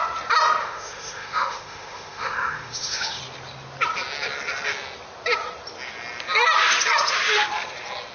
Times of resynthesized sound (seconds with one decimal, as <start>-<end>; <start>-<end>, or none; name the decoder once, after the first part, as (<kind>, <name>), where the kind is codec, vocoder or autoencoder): 0.6-3.2 (autoencoder, DAC-VAE)